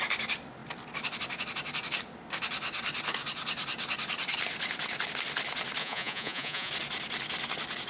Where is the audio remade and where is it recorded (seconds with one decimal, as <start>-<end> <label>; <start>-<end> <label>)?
0.0-5.8 recorded; 5.8-6.7 remade; 6.7-7.9 recorded